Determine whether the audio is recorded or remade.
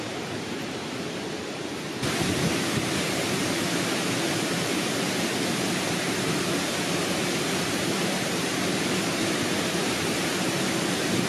remade